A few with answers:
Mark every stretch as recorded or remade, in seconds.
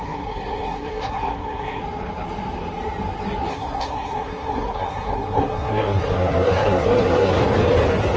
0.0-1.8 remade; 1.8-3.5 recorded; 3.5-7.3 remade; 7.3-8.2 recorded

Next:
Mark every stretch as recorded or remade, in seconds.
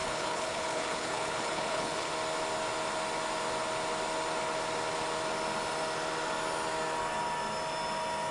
0.0-2.1 remade; 2.1-8.3 recorded